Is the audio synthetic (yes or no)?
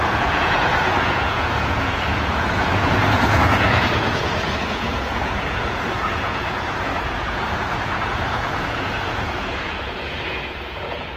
yes